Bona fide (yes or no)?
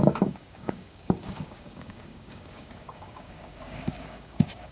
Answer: no